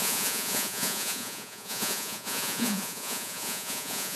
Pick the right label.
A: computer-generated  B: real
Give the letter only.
A